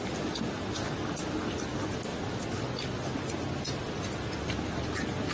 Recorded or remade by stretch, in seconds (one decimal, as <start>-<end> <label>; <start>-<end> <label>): 0.0-5.3 recorded